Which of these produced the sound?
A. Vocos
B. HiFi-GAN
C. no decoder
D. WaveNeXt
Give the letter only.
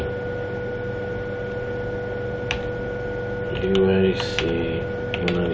C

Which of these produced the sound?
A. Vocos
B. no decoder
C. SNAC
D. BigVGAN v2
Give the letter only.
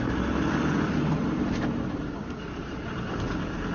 B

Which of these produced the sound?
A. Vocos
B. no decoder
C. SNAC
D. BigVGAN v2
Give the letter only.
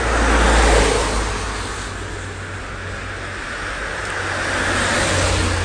B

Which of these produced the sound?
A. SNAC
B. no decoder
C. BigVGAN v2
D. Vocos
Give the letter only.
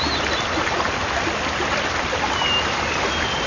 B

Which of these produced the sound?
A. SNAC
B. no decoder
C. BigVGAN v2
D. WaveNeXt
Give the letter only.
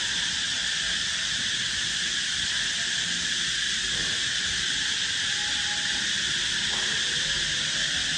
B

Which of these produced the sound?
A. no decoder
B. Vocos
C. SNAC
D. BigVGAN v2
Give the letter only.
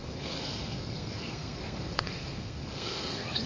C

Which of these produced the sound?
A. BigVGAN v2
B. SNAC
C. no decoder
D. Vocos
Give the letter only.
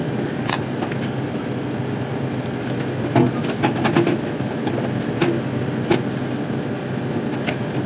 C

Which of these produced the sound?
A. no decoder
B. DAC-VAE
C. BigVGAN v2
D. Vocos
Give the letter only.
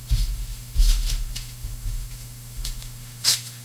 B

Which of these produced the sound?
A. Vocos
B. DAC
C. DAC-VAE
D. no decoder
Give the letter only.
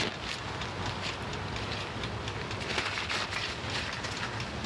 D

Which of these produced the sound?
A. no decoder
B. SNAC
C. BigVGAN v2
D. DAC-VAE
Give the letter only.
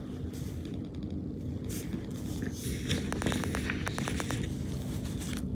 A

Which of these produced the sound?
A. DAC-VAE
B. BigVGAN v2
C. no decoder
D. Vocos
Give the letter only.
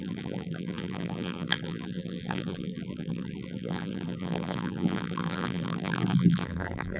B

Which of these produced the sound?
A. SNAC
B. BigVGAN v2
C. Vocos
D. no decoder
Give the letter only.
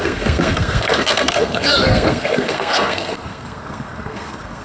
A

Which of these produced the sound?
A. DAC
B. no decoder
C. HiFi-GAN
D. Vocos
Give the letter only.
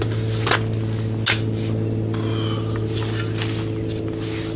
B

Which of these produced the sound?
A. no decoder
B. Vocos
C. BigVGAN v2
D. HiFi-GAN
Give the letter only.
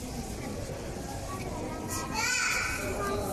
A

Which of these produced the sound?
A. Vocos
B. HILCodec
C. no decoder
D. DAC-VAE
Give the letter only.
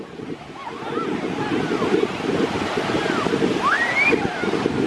C